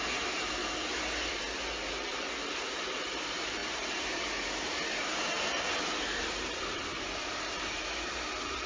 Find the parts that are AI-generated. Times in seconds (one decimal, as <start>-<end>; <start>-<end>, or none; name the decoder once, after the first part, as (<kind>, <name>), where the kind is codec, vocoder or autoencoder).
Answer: 0.0-0.6 (vocoder, BigVGAN v2); 2.9-8.7